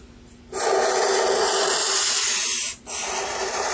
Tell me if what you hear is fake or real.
real